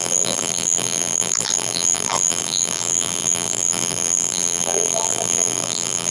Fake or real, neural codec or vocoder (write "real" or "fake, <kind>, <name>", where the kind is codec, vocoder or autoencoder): fake, vocoder, BigVGAN v2